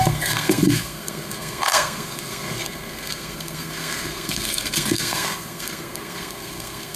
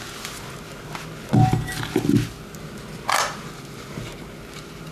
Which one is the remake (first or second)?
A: first